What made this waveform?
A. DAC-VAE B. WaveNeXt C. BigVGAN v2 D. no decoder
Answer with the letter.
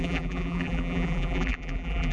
C